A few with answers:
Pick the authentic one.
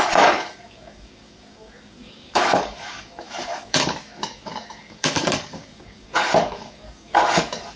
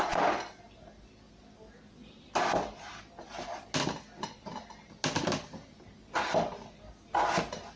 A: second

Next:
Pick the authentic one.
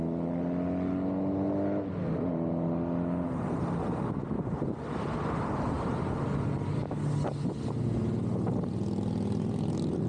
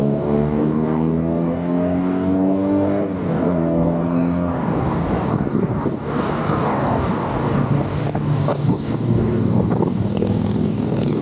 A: first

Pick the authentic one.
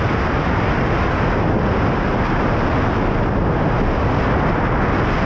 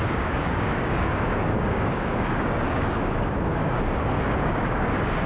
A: first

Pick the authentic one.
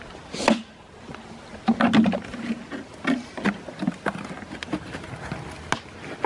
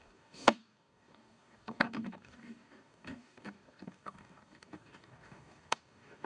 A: first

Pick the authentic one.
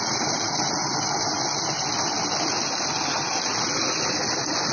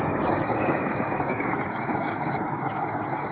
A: first